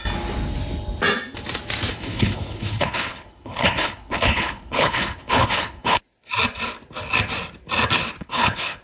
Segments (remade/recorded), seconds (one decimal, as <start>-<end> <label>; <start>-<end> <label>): 0.0-1.9 recorded; 1.9-6.0 remade; 6.0-8.2 recorded; 8.2-8.8 remade